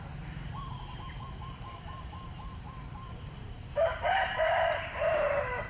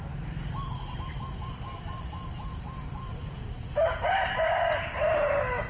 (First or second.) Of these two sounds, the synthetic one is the first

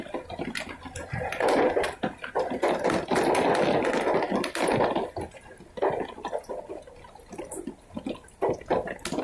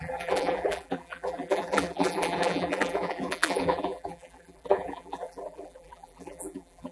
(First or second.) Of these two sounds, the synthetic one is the second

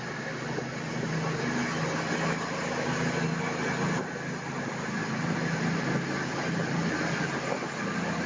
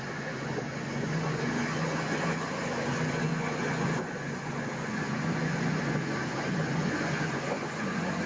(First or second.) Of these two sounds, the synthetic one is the second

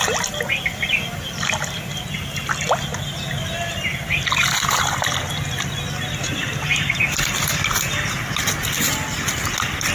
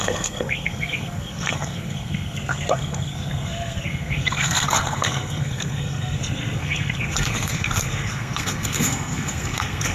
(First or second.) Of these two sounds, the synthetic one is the second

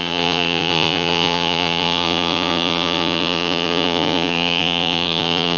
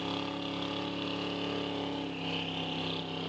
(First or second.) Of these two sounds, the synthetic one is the first